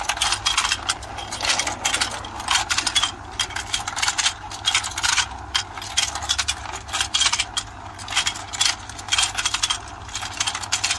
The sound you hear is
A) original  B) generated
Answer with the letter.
A